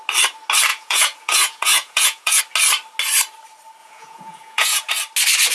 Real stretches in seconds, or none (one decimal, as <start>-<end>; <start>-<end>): 0.0-0.7; 2.4-3.8; 4.9-5.5

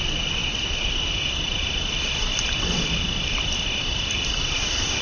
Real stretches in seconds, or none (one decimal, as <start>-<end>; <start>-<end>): 0.0-5.0